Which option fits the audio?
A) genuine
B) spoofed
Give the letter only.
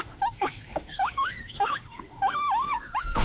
B